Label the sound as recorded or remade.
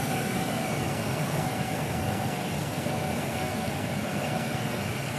remade